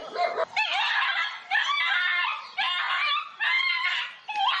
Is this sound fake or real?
real